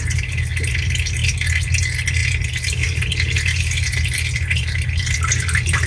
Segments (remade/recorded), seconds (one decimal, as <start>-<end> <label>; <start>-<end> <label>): 0.0-5.9 recorded